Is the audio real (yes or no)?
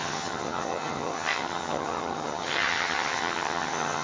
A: no